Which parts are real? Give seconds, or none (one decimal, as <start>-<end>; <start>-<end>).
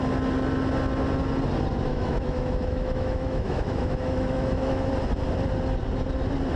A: 0.0-1.9; 4.9-6.6